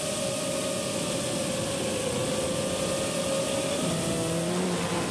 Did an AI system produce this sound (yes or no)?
no